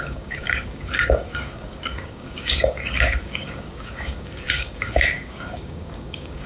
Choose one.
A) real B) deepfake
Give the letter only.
B